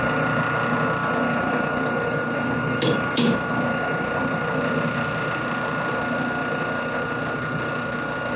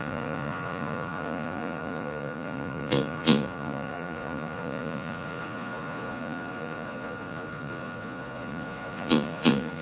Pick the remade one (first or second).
second